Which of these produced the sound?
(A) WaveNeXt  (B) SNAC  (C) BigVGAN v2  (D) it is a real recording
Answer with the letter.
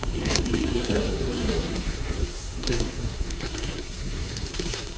B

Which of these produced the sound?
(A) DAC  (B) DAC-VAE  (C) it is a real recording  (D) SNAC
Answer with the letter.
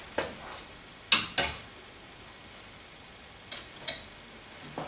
C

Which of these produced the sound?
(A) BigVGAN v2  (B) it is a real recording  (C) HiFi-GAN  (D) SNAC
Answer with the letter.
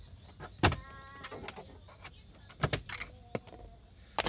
B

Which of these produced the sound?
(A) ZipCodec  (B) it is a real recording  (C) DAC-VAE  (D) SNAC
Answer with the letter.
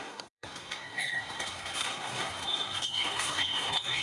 D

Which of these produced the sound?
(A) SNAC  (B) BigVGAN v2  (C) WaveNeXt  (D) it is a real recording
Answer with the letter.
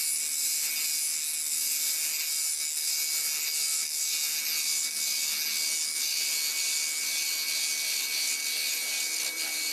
D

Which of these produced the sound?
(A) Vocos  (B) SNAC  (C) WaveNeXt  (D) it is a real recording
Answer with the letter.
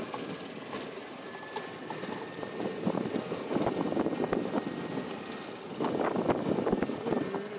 D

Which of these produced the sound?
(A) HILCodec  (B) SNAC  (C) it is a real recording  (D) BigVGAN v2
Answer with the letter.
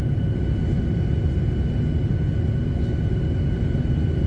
C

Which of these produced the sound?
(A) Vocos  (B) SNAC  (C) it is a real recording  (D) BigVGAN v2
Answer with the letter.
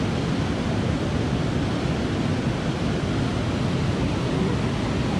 C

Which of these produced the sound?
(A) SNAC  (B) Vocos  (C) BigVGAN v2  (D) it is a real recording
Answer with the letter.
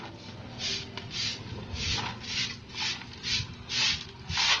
D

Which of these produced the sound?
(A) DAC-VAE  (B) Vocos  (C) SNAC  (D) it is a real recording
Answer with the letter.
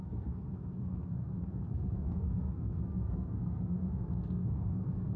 C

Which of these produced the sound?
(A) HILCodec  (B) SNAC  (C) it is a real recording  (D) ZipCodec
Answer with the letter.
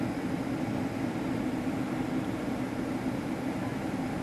C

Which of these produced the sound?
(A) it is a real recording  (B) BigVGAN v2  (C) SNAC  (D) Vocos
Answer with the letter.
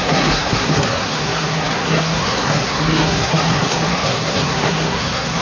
C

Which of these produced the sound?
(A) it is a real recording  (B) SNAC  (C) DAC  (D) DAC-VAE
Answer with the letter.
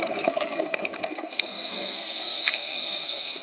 B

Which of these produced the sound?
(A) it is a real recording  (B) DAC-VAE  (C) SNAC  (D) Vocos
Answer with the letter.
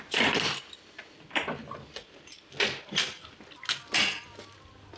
A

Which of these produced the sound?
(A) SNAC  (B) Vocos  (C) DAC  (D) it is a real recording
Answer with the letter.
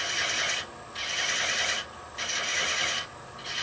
D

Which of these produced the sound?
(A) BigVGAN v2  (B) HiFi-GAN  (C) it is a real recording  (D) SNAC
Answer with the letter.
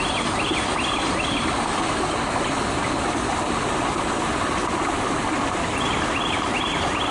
C